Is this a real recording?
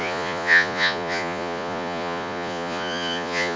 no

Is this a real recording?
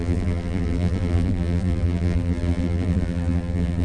no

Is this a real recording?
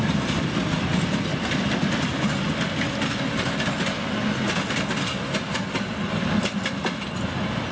yes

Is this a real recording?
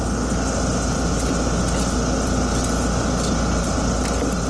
yes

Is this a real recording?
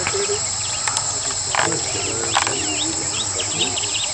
yes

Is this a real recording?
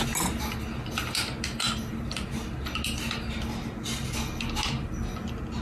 yes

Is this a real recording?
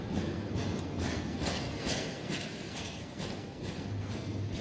no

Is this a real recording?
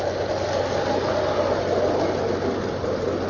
yes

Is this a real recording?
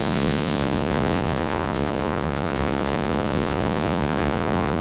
no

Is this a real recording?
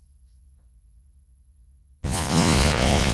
no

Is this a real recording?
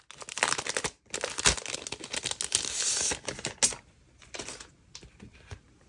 yes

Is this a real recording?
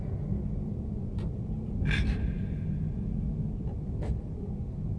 yes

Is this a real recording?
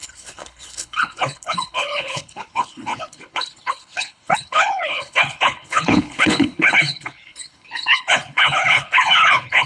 no